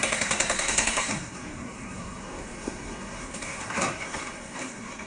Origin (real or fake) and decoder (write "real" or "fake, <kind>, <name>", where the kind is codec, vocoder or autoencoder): fake, codec, SNAC